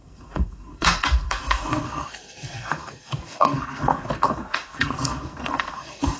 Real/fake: fake